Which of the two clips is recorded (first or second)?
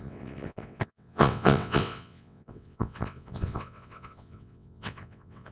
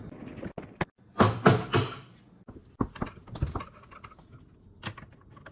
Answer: second